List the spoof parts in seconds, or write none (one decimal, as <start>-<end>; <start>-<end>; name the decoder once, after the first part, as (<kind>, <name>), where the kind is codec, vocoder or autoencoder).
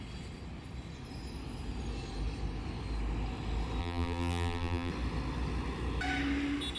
3.8-4.9 (vocoder, BigVGAN v2)